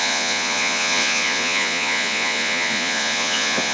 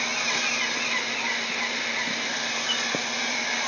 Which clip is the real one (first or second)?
second